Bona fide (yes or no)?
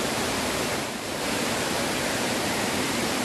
no